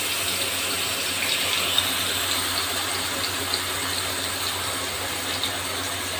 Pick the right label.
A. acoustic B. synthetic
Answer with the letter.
A